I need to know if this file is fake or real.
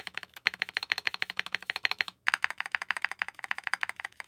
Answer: fake